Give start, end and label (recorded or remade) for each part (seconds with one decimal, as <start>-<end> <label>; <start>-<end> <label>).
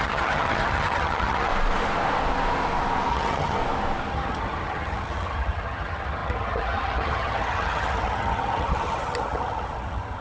0.0-1.5 remade; 1.5-3.1 recorded; 3.1-3.6 remade; 3.6-4.1 recorded; 4.1-10.2 remade